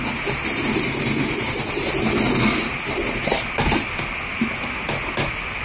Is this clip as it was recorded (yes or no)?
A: yes